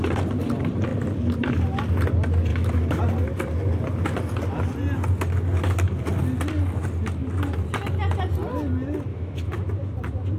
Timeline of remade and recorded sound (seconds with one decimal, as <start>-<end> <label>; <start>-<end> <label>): 0.0-2.5 recorded; 2.5-3.0 remade; 3.0-9.1 recorded; 9.1-9.7 remade; 9.7-10.4 recorded